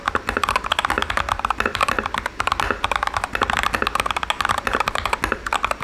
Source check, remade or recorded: recorded